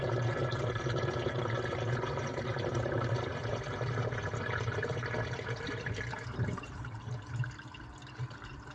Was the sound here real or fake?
fake